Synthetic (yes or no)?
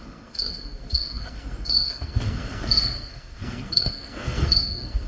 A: yes